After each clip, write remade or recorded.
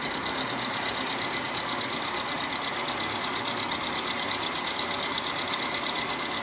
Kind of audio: recorded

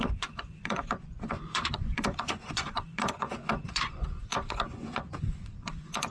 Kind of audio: remade